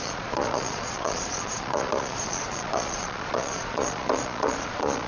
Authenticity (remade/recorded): remade